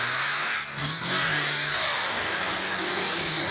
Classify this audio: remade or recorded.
remade